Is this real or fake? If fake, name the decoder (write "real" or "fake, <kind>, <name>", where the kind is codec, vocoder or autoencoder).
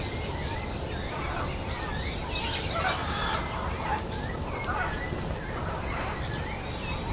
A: real